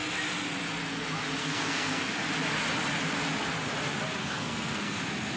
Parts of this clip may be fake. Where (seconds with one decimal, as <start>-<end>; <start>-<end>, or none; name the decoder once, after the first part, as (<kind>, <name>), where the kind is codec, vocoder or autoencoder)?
1.4-2.1 (codec, SNAC); 4.2-5.0